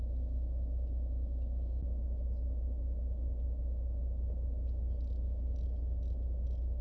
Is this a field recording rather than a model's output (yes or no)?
yes